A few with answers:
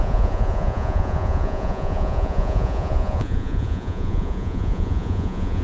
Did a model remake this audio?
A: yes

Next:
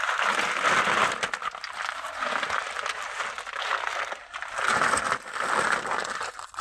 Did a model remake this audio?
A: no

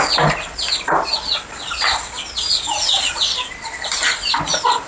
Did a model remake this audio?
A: no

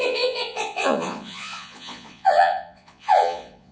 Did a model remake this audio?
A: yes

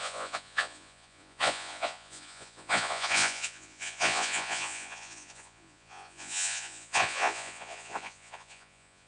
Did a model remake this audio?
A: yes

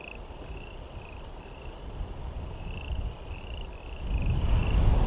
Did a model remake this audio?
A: no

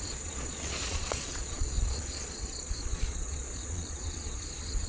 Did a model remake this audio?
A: yes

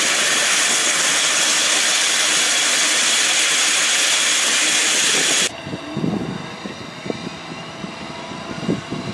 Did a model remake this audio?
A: no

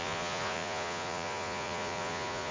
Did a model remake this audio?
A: yes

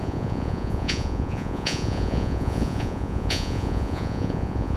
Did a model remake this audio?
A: yes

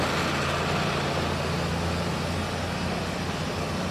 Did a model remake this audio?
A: no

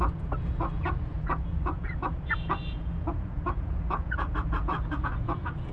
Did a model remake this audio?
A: yes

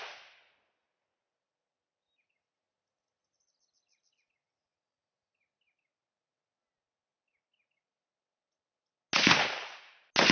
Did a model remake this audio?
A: no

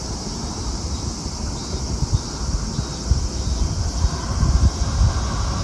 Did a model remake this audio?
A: no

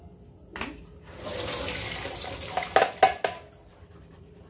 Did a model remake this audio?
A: no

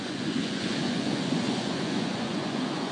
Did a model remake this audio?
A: yes